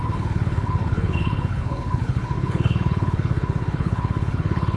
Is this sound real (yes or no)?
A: no